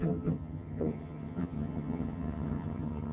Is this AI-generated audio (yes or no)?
yes